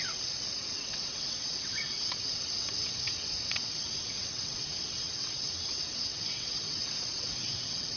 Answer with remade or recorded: remade